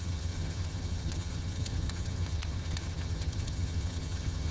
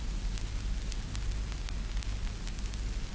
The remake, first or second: first